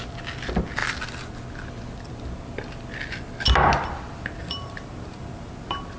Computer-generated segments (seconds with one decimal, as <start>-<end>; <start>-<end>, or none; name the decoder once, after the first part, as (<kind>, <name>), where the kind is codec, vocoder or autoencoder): 4.4-5.5 (vocoder, BigVGAN v2)